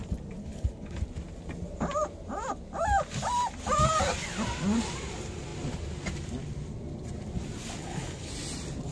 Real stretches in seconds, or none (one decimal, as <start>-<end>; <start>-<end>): 0.0-0.4; 1.0-7.8; 8.3-8.9